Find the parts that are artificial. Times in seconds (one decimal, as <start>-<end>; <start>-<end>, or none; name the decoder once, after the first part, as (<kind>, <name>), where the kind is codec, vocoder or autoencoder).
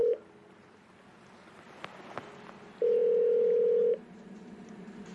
none